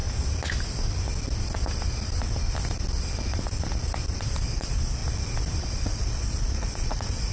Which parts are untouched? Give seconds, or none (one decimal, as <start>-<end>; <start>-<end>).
0.0-4.1; 5.0-5.6